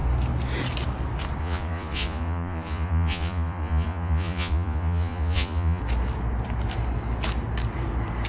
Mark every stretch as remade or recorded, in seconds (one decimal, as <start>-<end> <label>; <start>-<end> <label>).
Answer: 0.0-1.4 recorded; 1.4-5.8 remade; 5.8-8.3 recorded